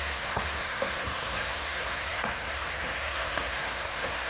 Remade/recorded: remade